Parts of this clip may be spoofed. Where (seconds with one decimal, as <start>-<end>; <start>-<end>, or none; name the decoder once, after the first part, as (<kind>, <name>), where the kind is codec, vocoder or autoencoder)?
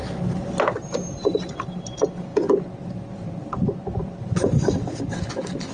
0.0-0.6 (vocoder, BigVGAN v2); 2.3-5.3